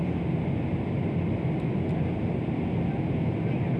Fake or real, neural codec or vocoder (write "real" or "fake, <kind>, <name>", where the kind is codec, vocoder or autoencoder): real